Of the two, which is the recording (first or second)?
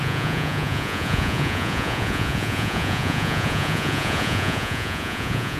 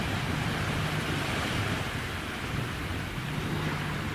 second